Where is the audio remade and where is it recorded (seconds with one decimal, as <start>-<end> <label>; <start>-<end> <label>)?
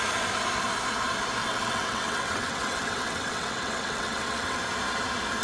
0.0-1.4 recorded; 1.4-4.6 remade; 4.6-5.4 recorded